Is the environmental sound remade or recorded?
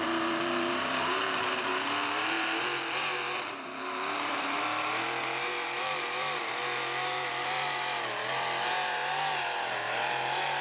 remade